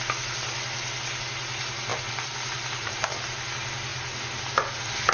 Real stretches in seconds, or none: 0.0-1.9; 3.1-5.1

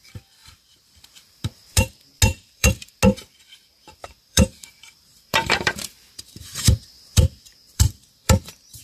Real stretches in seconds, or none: 0.0-0.4; 1.9-2.3; 2.9-4.0

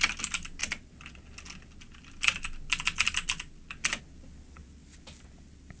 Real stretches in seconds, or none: 0.0-5.8

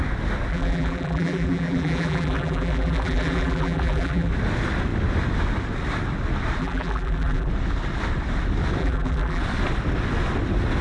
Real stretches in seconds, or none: 0.0-0.5; 4.3-6.6; 7.5-8.8; 9.4-10.8

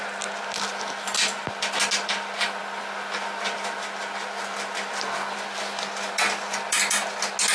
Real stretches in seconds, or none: 0.0-4.5; 5.4-7.5

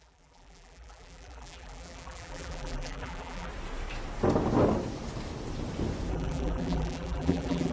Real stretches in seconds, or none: 3.5-6.1